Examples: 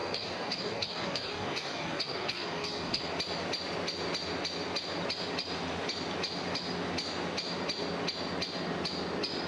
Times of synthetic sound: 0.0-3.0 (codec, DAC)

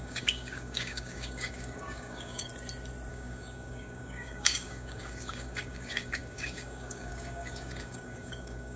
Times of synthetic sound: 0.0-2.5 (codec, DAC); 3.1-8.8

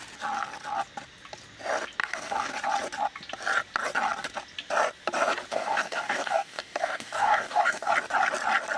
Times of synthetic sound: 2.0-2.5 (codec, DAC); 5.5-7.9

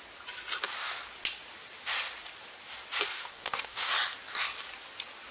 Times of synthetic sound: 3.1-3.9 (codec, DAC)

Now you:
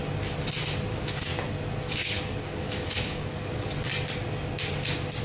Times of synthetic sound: 0.9-1.3 (codec, DAC); 1.9-3.9